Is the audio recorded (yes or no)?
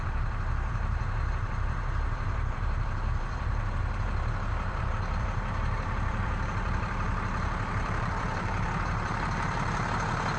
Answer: no